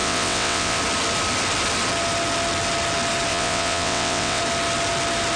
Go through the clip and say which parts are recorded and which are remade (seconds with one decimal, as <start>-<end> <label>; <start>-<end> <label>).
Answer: 0.0-0.8 remade; 0.8-3.3 recorded; 3.3-4.4 remade; 4.4-5.4 recorded